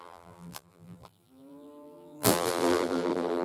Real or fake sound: fake